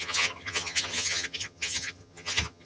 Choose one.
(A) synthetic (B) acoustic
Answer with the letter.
A